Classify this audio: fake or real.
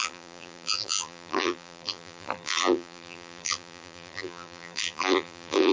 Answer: fake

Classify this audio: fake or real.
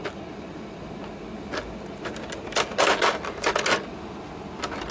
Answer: real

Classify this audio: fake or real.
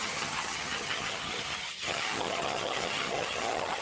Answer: fake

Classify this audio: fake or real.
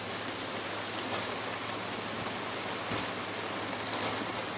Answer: real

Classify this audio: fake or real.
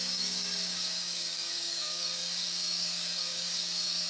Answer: fake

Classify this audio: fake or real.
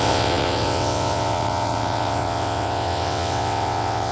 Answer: fake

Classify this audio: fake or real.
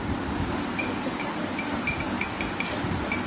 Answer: real